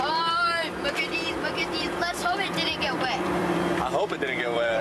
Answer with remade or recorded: remade